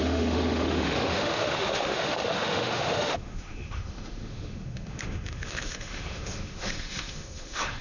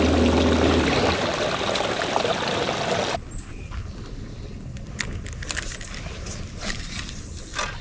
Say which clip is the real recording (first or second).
second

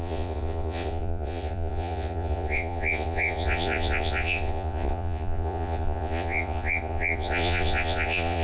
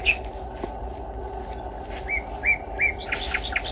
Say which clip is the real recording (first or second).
second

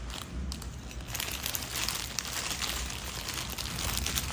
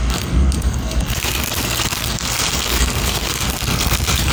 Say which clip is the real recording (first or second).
first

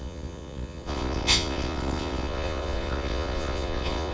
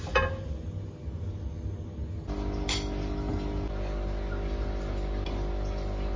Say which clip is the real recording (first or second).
second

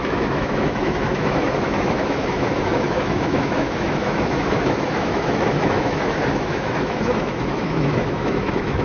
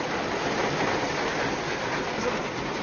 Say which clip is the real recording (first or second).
second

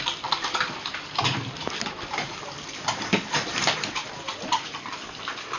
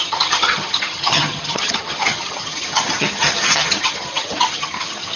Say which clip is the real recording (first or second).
first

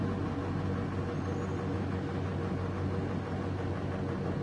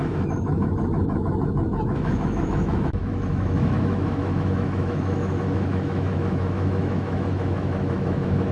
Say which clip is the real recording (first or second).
first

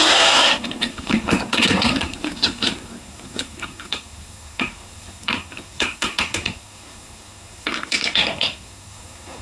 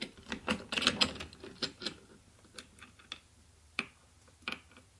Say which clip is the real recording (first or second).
second